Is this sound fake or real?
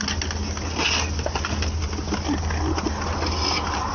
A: real